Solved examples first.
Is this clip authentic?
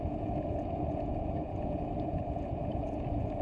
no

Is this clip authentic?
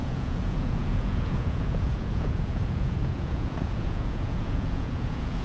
no